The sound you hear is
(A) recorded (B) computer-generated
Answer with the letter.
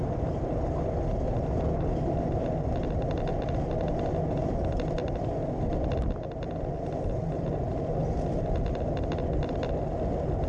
A